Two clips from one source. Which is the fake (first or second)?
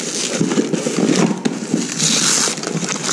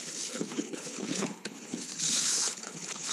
second